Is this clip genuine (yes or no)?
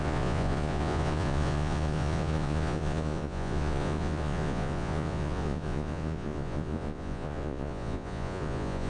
no